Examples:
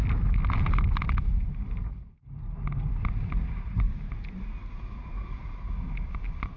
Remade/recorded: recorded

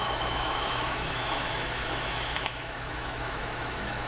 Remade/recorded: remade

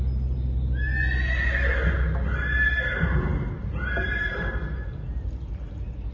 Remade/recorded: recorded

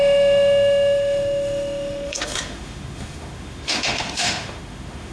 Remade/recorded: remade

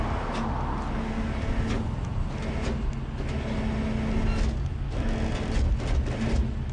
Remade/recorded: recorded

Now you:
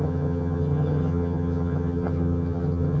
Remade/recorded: remade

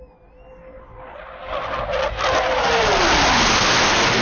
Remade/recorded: recorded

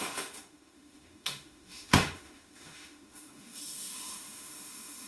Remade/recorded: remade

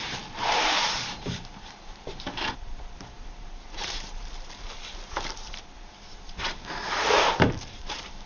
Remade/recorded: remade